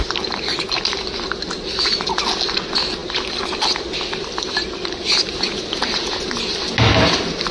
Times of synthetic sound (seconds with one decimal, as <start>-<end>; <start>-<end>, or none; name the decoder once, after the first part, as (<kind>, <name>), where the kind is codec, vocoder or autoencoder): none